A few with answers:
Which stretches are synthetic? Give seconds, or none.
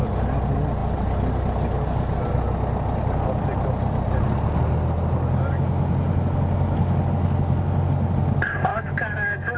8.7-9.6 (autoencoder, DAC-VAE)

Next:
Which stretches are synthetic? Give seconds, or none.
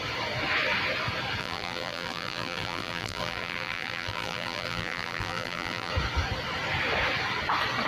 1.4-5.9 (vocoder, BigVGAN v2)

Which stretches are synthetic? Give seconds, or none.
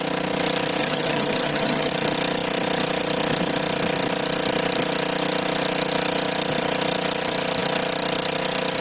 0.8-1.9 (vocoder, HiFi-GAN)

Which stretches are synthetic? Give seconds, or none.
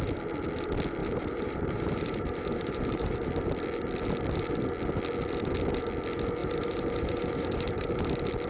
1.0-3.3 (vocoder, BigVGAN v2); 6.4-8.0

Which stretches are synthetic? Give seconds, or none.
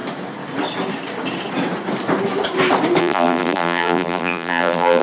3.0-5.0 (vocoder, BigVGAN v2)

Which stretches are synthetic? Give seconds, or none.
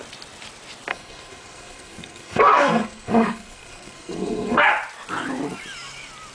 0.9-4.7 (codec, SNAC)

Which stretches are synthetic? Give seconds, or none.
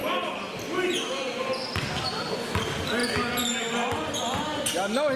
none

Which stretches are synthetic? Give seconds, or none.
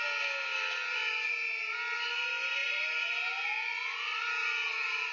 none